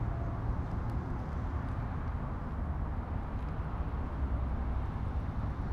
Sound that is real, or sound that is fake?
real